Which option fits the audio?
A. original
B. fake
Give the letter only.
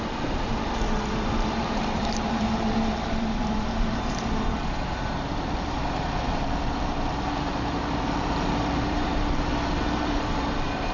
B